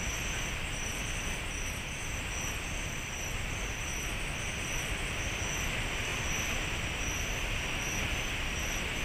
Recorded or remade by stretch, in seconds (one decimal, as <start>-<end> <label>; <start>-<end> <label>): 0.0-6.1 recorded; 6.1-7.0 remade; 7.0-9.0 recorded